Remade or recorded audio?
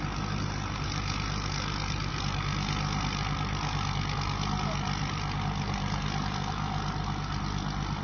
remade